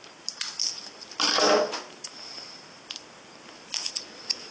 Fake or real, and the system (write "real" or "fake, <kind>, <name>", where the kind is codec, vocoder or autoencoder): real